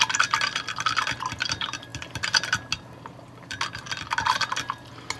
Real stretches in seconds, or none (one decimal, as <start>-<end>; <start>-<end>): 0.0-5.2